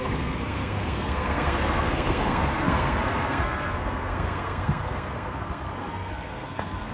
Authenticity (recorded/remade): remade